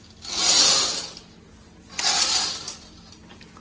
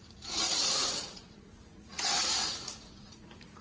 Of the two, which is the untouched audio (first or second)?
first